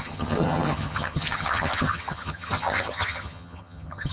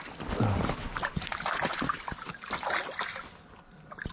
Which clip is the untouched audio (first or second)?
second